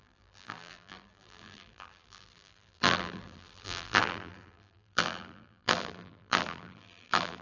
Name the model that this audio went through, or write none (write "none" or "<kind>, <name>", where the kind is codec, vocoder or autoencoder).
vocoder, BigVGAN v2